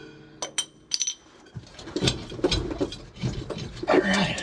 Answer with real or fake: real